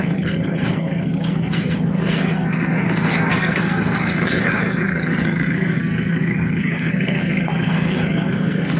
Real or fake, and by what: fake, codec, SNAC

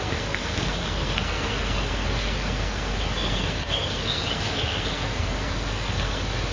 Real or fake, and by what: fake, codec, SNAC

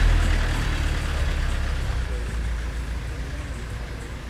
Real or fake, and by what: real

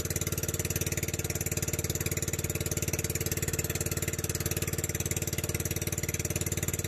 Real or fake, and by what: real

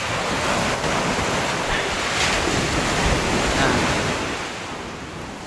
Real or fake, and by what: real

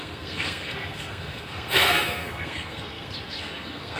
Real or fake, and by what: fake, codec, SNAC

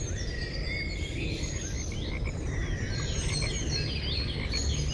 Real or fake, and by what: real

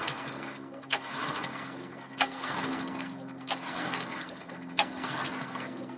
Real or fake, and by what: fake, codec, SNAC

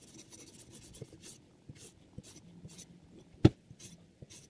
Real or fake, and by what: real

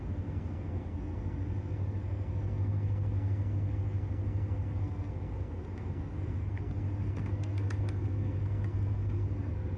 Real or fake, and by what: fake, codec, SNAC